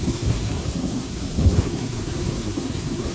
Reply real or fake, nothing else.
fake